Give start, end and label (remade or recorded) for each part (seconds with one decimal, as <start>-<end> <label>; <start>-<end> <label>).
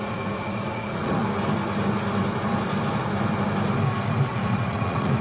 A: 0.0-1.2 remade; 1.2-4.3 recorded; 4.3-5.2 remade